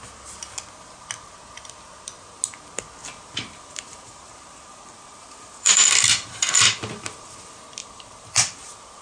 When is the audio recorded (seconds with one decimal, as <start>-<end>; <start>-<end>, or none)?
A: 0.0-3.0; 7.3-7.8